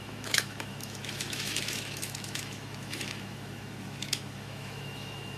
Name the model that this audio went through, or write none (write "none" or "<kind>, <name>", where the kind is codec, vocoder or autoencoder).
autoencoder, DAC-VAE